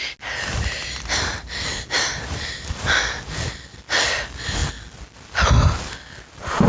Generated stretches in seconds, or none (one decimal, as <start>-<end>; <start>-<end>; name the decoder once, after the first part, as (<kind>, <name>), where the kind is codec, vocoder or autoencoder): none